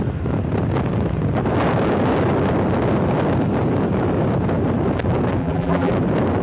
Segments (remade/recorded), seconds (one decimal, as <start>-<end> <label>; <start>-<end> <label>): 0.0-5.4 recorded; 5.4-5.9 remade; 5.9-6.4 recorded